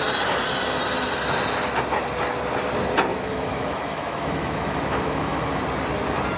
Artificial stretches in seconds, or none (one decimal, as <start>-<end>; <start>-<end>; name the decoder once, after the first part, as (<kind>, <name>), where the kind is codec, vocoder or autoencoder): 3.1-5.6 (autoencoder, DAC-VAE)